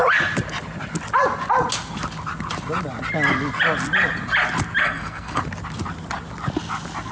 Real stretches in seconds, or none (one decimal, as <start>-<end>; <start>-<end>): 0.0-4.8; 5.4-7.1